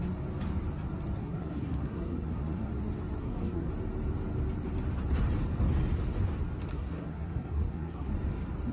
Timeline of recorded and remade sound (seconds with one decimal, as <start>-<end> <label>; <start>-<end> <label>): 0.0-1.2 recorded; 1.2-2.7 remade; 2.7-3.2 recorded; 3.2-3.7 remade; 3.7-6.7 recorded; 6.7-8.1 remade; 8.1-8.7 recorded